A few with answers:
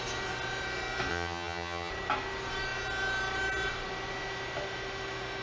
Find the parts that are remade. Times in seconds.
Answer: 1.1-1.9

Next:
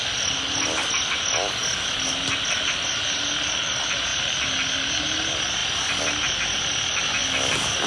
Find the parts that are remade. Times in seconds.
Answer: none